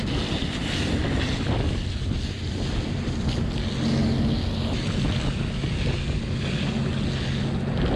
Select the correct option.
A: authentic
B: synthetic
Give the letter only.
A